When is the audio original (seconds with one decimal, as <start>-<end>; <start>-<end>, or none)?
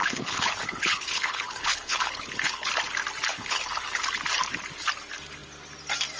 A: 2.7-3.3; 4.0-6.2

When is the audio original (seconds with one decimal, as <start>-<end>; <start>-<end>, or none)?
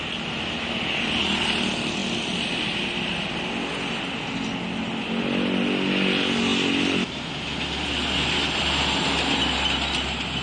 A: 0.0-10.4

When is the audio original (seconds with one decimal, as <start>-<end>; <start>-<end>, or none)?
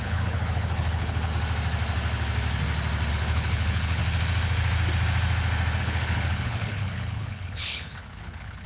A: 1.3-3.1; 4.0-5.8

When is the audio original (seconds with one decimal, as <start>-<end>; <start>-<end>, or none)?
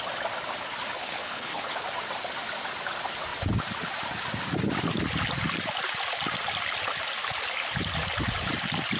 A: 0.0-1.0; 1.8-9.0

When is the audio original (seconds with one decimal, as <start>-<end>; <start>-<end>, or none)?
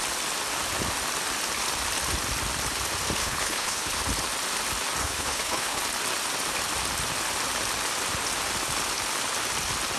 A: 0.0-3.2; 3.9-5.0; 5.8-10.0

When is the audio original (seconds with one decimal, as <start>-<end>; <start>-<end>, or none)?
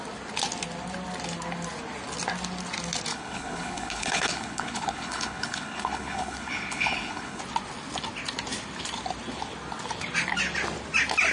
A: 0.0-3.1; 7.4-11.3